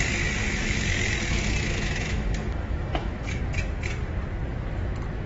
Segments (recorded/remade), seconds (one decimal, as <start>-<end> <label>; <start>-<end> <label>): 0.0-0.4 recorded; 0.4-3.4 remade; 3.4-5.3 recorded